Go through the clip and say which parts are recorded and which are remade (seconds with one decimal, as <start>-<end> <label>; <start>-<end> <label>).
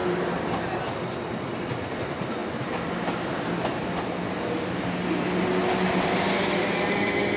0.0-7.4 recorded